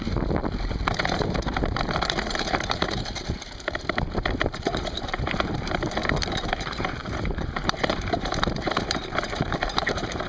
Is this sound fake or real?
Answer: fake